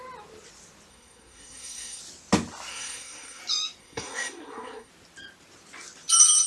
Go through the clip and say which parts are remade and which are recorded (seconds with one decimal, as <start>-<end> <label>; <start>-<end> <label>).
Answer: 0.0-0.9 recorded; 0.9-2.0 remade; 2.0-2.7 recorded; 2.7-3.4 remade; 3.4-3.8 recorded; 3.8-4.9 remade; 4.9-6.5 recorded